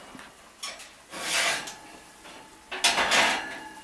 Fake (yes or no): no